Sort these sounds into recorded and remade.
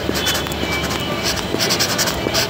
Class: recorded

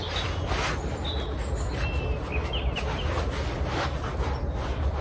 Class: recorded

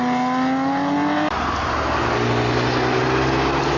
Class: recorded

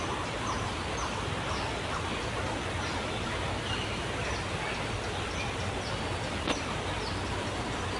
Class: recorded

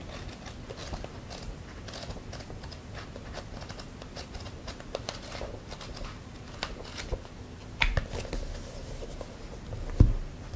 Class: recorded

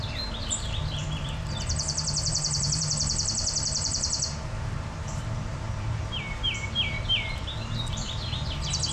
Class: remade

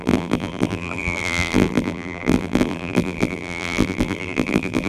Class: remade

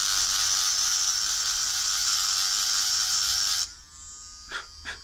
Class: remade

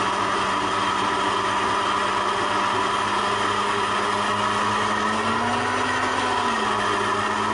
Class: recorded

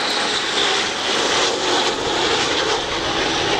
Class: recorded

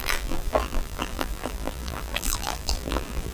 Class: remade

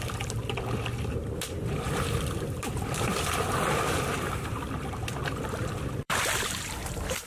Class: remade